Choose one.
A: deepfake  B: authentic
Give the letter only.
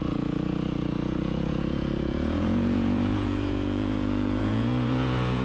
A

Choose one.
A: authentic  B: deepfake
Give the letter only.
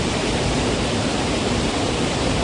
B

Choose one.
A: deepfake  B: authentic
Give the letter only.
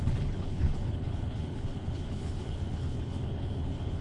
A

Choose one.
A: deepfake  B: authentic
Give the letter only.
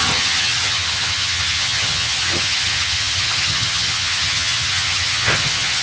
A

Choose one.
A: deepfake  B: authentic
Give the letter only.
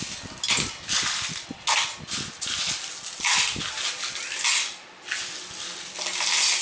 B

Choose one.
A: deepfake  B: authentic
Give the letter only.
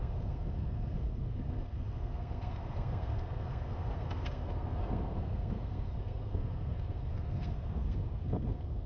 A